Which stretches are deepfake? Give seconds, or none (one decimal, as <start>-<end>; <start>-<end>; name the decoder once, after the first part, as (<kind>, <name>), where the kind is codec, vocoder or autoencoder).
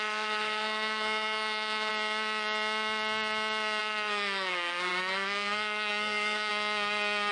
0.0-1.9 (codec, SNAC); 3.8-6.5